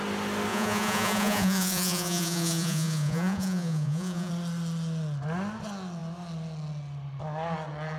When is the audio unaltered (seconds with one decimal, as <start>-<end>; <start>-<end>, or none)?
0.0-0.5; 4.3-8.0